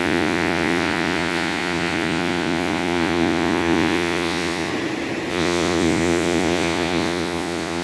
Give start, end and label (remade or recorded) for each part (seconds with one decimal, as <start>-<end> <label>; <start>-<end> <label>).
0.0-4.7 remade; 4.7-5.3 recorded; 5.3-7.8 remade